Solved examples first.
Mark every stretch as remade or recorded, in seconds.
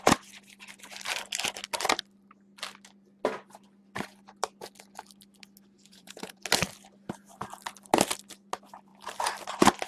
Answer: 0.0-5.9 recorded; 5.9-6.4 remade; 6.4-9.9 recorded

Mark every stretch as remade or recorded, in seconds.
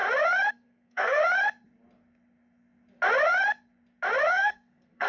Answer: 0.0-0.5 recorded; 0.5-1.2 remade; 1.2-4.3 recorded; 4.3-5.1 remade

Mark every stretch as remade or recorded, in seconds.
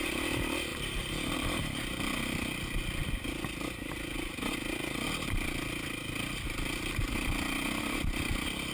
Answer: 0.0-0.7 recorded; 0.7-1.8 remade; 1.8-8.7 recorded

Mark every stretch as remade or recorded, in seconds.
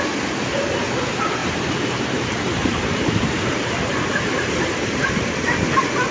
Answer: 0.0-1.4 recorded; 1.4-5.1 remade; 5.1-6.1 recorded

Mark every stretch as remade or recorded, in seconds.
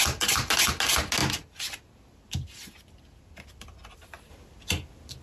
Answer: 0.0-5.2 recorded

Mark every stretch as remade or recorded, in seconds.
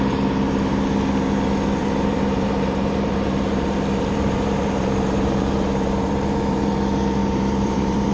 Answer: 0.0-1.8 recorded; 1.8-6.7 remade; 6.7-7.2 recorded; 7.2-8.1 remade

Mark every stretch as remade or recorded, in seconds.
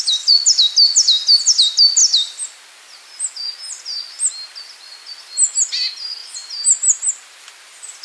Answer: 0.0-8.0 recorded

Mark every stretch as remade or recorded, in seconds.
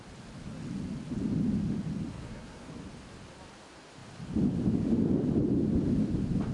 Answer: 0.0-2.1 recorded; 2.1-2.7 remade; 2.7-6.5 recorded